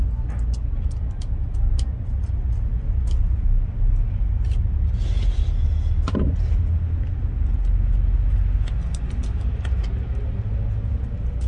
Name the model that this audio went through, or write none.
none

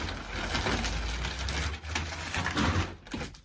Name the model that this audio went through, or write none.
none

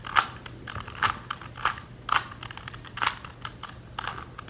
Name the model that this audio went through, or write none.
none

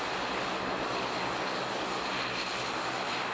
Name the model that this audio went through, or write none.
none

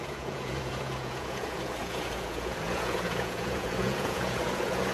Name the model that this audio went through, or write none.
vocoder, Vocos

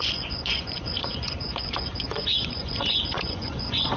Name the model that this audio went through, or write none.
vocoder, Vocos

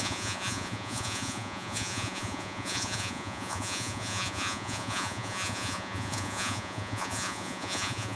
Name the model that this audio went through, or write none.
vocoder, Vocos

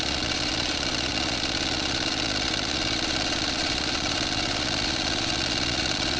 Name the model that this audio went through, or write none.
vocoder, Vocos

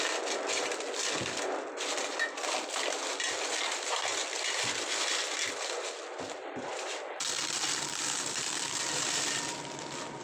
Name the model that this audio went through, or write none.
none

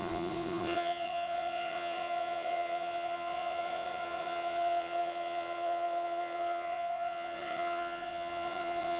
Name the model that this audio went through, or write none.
vocoder, Vocos